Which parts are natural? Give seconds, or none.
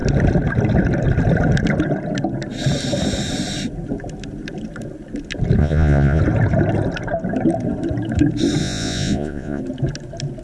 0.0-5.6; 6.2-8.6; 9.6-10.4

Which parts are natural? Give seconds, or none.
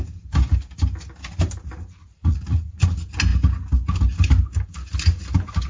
0.0-2.2; 2.8-5.7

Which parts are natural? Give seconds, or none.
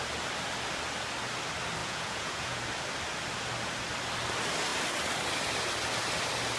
0.0-1.8; 2.6-6.6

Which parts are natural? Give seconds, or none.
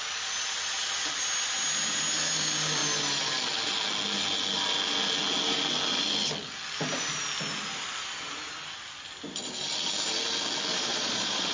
0.0-10.7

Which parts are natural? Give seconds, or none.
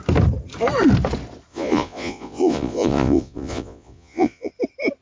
0.0-1.5; 4.5-5.0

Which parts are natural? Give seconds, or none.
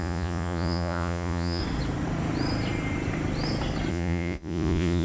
1.6-3.9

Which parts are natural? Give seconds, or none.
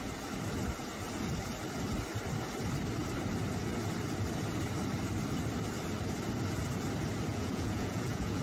0.0-7.3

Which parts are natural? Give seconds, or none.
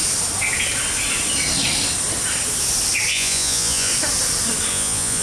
0.0-3.1; 3.9-4.7